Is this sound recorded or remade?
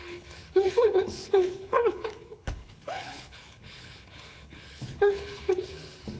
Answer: remade